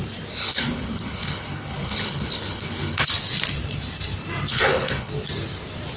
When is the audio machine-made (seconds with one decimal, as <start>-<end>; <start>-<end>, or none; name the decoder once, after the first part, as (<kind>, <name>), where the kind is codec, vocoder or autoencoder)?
0.4-3.1 (codec, HILCodec); 4.5-5.1